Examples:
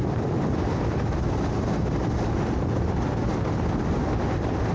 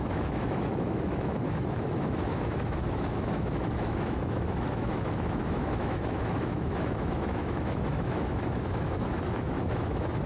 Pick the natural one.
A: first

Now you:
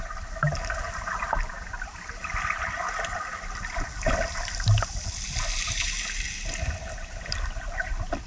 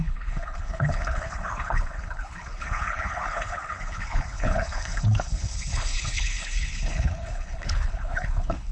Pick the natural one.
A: first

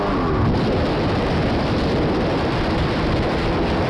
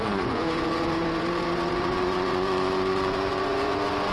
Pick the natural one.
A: first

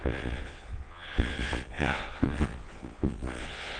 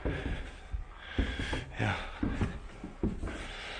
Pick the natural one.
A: second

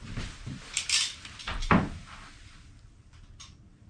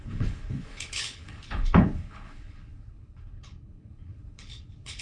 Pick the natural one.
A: first